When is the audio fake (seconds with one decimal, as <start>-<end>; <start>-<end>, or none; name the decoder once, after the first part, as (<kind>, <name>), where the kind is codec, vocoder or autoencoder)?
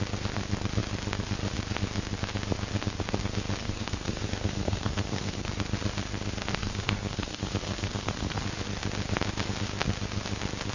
3.6-5.5 (codec, SNAC); 6.6-8.4